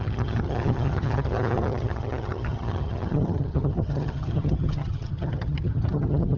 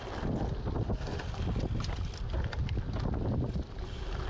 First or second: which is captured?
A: second